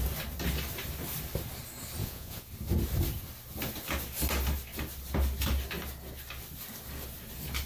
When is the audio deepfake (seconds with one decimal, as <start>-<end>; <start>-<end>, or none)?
2.0-2.5